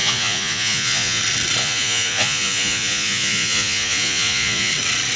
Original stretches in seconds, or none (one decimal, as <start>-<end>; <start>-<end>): 1.2-1.6; 4.7-5.2